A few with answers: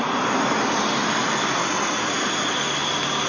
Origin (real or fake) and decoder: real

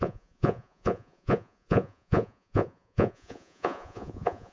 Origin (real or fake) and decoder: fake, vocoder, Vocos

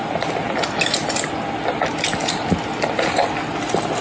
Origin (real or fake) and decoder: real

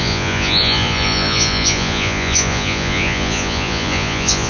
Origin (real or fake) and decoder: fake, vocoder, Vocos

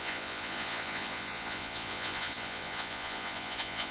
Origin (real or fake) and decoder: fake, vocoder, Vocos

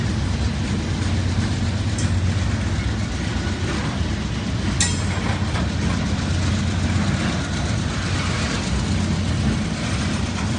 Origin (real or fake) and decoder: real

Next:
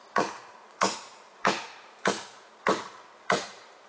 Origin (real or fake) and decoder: fake, vocoder, Vocos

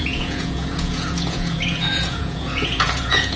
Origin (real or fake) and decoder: fake, vocoder, Vocos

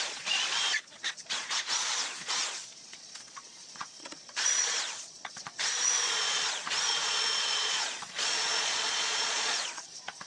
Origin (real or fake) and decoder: fake, vocoder, Vocos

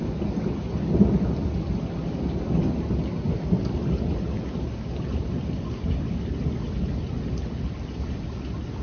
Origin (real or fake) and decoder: real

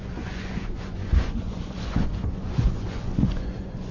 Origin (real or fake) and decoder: fake, vocoder, Vocos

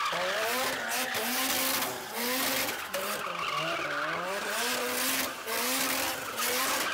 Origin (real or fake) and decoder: real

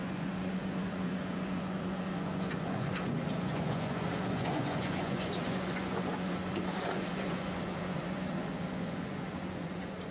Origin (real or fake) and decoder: fake, vocoder, Vocos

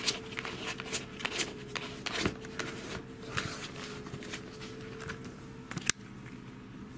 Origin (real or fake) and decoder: real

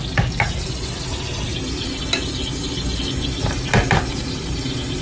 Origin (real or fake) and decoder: real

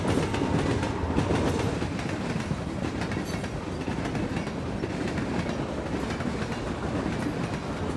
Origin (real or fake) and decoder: real